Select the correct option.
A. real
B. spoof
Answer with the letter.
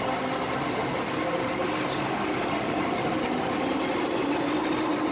A